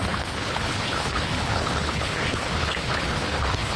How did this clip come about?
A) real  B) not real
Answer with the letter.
B